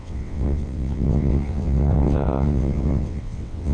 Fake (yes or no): yes